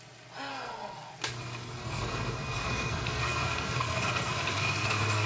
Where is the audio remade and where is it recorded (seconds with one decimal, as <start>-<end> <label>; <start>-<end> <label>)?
0.0-0.5 recorded; 0.5-1.1 remade; 1.1-1.8 recorded; 1.8-5.3 remade